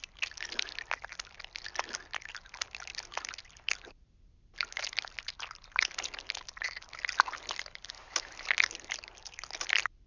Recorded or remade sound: recorded